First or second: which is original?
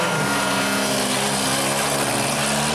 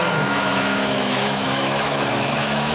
first